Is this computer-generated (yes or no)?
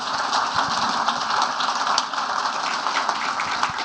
no